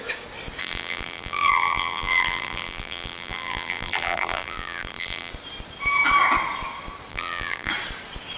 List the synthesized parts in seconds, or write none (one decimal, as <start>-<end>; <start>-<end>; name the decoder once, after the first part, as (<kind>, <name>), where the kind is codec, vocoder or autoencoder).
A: 0.6-5.3 (vocoder, BigVGAN v2); 7.1-7.7